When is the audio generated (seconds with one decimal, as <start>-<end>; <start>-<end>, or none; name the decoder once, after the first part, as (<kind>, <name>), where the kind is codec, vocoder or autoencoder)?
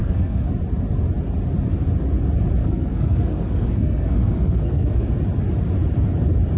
0.0-0.5 (codec, SNAC); 2.6-5.1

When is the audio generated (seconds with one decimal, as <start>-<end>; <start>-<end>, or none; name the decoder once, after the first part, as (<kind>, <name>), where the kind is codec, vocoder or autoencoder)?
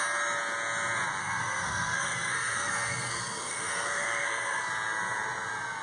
1.2-4.7 (codec, SNAC)